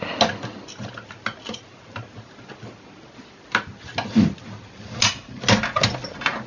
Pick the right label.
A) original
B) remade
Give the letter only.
A